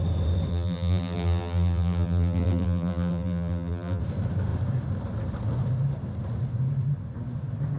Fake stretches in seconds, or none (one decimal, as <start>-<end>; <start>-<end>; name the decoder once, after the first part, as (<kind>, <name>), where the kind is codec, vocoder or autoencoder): 0.5-4.0 (vocoder, BigVGAN v2)